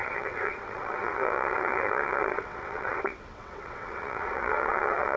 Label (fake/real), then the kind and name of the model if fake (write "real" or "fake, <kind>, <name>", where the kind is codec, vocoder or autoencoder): fake, vocoder, WaveNeXt